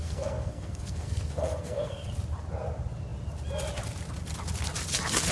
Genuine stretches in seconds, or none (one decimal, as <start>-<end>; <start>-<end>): 2.1-5.3